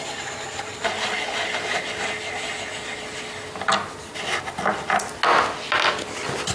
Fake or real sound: real